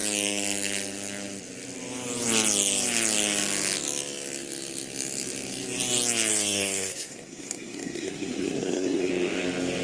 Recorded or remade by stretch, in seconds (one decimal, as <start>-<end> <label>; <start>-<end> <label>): 0.0-6.3 recorded; 6.3-9.1 remade; 9.1-9.8 recorded